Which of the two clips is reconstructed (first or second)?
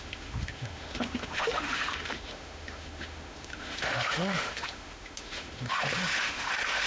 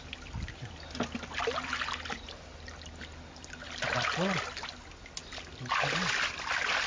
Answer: first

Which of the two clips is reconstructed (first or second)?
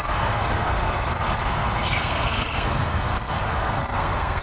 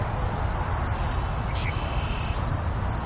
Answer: first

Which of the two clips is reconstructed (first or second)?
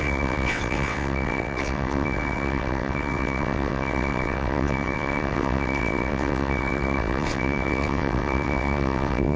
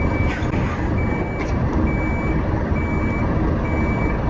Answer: first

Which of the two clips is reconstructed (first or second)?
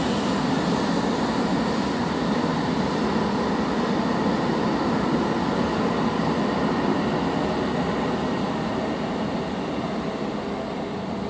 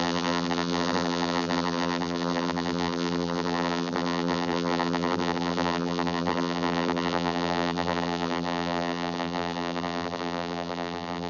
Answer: second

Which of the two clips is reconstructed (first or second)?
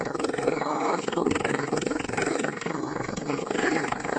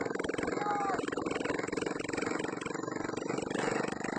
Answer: first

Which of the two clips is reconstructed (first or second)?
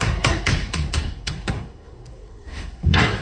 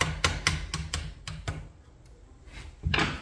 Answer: first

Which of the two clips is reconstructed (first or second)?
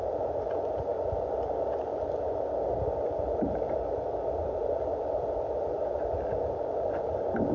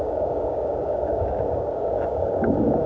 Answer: second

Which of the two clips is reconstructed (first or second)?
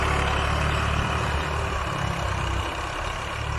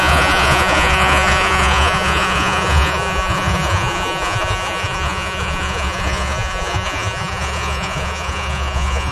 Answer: second